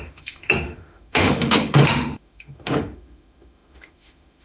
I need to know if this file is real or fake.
fake